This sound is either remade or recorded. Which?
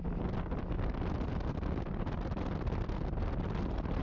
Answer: recorded